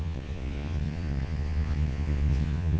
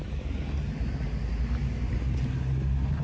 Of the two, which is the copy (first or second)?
first